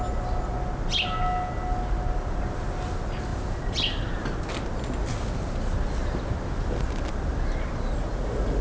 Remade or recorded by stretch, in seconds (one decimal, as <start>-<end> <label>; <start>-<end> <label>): 0.0-8.6 recorded